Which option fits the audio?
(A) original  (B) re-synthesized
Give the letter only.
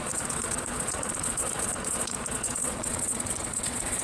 B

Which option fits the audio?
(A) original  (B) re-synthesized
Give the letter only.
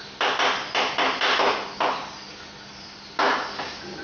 A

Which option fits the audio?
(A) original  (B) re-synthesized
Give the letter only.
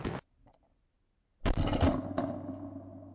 A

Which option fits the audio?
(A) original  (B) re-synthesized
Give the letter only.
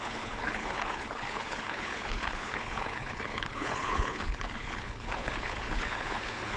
B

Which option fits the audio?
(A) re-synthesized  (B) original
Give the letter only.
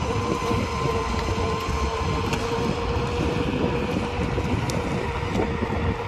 B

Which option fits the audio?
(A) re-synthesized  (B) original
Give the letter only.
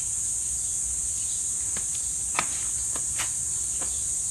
B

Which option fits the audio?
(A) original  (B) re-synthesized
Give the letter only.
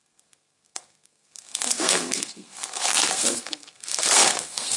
B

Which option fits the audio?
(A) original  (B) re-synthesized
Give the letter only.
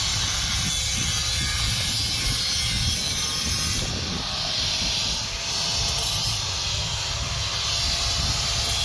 A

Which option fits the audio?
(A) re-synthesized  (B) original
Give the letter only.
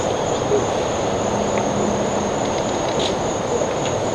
B